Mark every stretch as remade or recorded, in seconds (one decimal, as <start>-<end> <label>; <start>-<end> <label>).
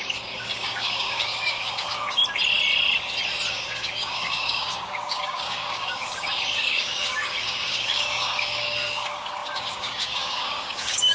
0.0-2.2 remade; 2.2-3.5 recorded; 3.5-11.1 remade